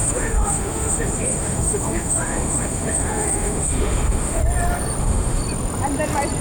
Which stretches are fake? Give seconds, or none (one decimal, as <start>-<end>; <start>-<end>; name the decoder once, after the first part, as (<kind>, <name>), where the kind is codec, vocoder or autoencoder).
0.0-4.4 (autoencoder, DAC-VAE); 5.0-5.4